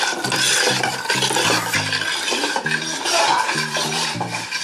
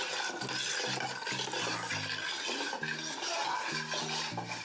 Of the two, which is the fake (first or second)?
first